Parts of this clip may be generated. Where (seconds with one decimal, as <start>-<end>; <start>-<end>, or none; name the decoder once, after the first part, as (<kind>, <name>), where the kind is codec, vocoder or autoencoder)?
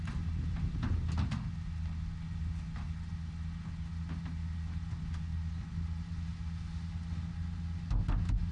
none